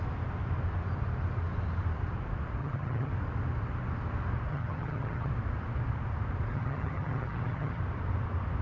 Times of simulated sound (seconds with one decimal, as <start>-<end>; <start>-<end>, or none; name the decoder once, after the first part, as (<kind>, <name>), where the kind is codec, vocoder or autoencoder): 2.6-3.1 (vocoder, HiFi-GAN); 4.5-5.3; 6.5-7.8